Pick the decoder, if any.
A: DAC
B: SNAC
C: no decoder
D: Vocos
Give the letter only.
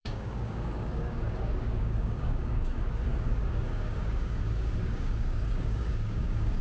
A